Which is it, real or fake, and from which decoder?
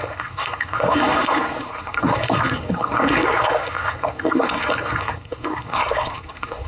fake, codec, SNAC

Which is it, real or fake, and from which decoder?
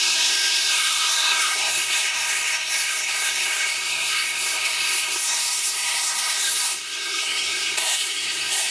fake, codec, SNAC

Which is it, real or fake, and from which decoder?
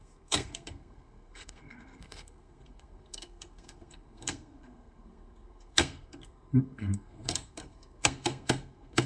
fake, codec, SNAC